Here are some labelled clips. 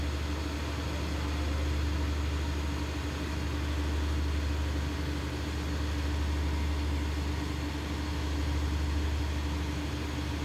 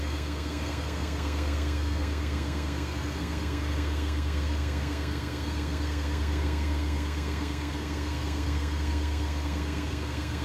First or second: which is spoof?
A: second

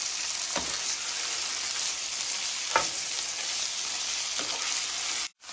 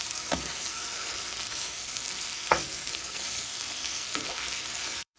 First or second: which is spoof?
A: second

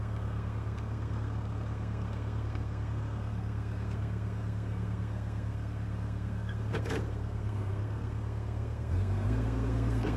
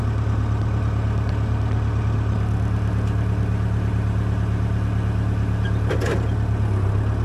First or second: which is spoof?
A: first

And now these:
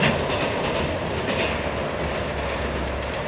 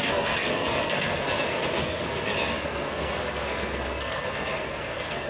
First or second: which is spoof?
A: second